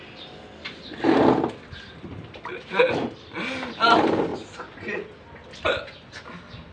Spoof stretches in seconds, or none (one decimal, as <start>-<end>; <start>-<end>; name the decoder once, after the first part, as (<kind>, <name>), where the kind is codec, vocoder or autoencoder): 0.0-4.3 (vocoder, BigVGAN v2); 5.7-6.7